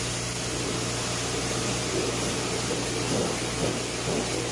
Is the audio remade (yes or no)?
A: no